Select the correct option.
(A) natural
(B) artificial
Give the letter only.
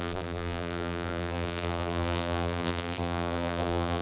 B